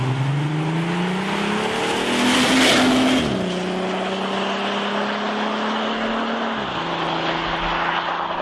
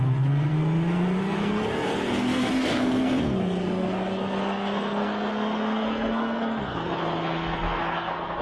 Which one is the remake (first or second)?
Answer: second